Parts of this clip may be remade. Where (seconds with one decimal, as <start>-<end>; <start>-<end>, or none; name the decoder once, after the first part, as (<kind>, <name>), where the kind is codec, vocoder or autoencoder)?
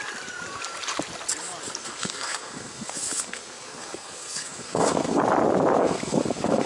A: 1.8-5.2 (codec, SNAC); 5.8-6.7